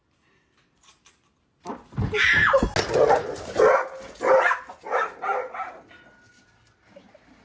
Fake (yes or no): no